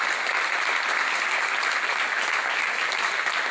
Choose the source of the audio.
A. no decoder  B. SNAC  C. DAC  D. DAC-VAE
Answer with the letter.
A